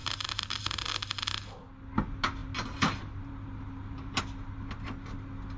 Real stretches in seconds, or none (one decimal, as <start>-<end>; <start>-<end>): 0.6-2.4; 4.2-5.6